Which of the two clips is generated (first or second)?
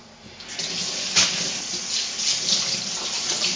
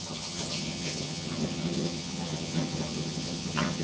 second